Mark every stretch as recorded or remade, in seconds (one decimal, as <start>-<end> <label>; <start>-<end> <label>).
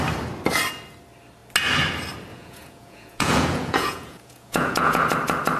0.0-2.3 recorded; 2.3-5.0 remade; 5.0-5.6 recorded